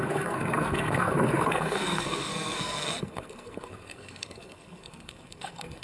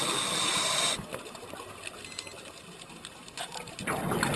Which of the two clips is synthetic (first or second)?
first